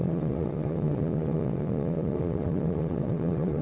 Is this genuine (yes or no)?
no